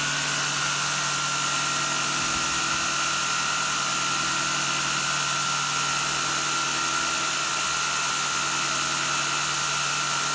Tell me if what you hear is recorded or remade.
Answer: recorded